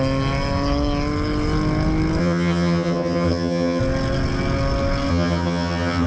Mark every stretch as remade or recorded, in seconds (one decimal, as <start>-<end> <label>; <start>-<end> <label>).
0.0-2.2 recorded; 2.2-3.8 remade; 3.8-5.1 recorded; 5.1-6.1 remade

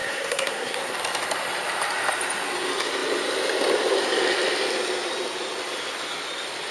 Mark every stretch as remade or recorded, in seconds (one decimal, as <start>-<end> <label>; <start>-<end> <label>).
0.0-0.9 remade; 0.9-6.7 recorded

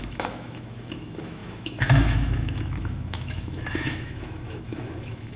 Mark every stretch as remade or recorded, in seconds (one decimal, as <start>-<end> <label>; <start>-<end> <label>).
0.0-5.4 remade

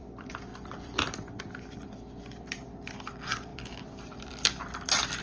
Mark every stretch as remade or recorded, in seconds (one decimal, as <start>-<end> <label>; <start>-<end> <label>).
0.0-5.2 remade

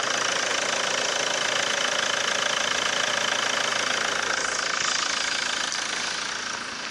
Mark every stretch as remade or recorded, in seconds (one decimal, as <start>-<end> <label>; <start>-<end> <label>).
0.0-6.9 recorded

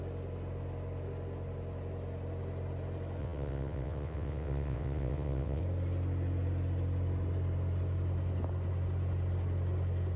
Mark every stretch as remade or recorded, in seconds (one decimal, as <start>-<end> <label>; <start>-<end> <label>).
0.0-3.2 recorded; 3.2-5.6 remade; 5.6-10.2 recorded

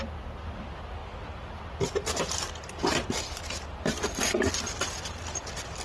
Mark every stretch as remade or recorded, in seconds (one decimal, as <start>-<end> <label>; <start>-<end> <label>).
0.0-5.8 recorded